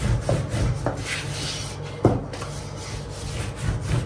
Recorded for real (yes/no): yes